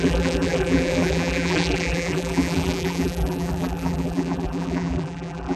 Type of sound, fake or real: fake